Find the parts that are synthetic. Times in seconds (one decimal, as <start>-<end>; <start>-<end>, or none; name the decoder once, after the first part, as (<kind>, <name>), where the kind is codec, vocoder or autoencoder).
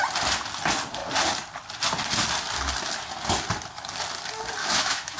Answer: 4.6-5.2 (autoencoder, DAC-VAE)